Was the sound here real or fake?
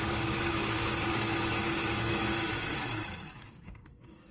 fake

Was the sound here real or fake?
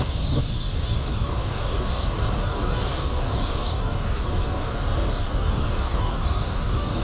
fake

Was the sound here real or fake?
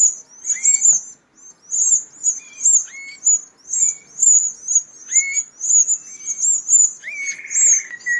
real